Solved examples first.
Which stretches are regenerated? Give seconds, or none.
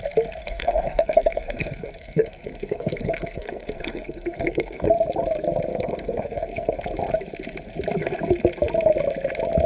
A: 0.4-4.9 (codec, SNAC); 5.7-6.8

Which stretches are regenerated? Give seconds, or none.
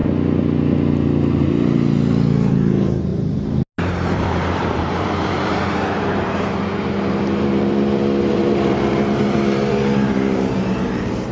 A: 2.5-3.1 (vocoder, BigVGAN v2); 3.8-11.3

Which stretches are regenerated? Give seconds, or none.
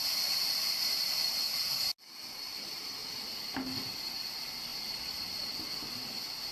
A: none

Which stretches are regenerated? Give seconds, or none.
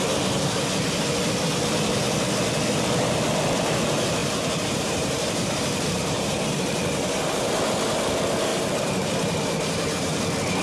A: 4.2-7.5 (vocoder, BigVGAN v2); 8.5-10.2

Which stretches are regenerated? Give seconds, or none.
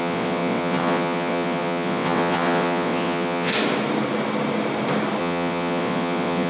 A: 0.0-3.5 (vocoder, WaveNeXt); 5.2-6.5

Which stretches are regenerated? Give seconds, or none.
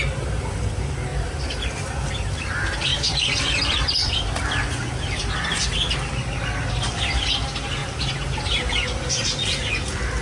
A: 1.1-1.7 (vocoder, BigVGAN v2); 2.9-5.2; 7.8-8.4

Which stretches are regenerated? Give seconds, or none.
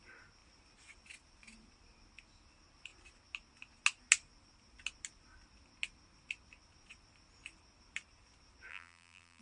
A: 8.7-9.4 (vocoder, BigVGAN v2)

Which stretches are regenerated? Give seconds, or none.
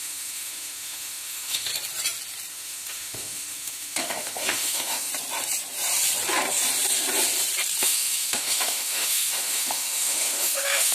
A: 0.0-1.7 (autoencoder, DAC-VAE); 2.5-5.1; 7.8-10.9